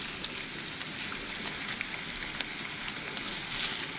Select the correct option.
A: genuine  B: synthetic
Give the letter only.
A